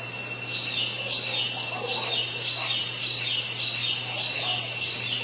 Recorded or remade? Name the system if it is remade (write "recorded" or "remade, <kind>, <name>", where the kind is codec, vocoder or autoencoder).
recorded